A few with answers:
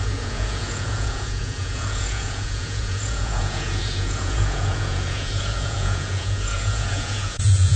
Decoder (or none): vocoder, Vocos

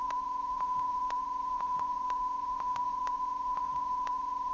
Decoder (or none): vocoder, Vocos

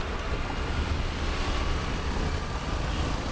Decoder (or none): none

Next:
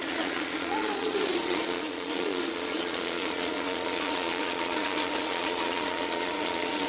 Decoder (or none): vocoder, Vocos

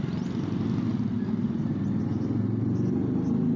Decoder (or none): none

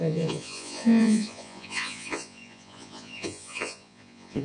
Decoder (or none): vocoder, Vocos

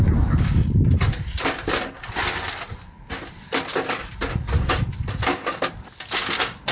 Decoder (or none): none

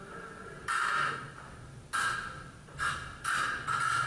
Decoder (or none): none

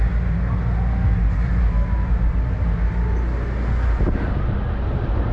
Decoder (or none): none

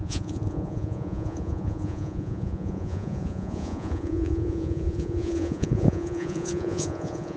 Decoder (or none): vocoder, Vocos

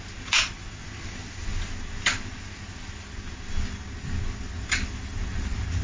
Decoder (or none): none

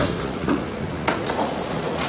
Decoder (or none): vocoder, Vocos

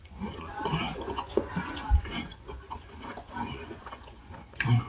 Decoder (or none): vocoder, Vocos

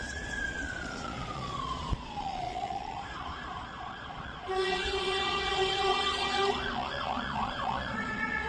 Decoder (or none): vocoder, Vocos